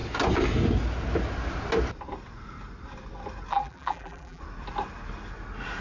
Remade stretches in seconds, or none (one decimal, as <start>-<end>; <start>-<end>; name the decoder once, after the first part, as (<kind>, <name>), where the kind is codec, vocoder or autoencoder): 3.5-4.4 (vocoder, BigVGAN v2)